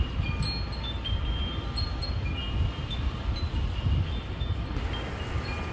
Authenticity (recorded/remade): recorded